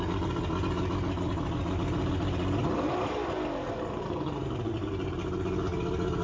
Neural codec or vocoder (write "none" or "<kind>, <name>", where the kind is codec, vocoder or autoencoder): none